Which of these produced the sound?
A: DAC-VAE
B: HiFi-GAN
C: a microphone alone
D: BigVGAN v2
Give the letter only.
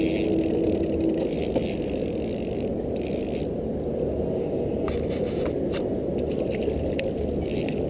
C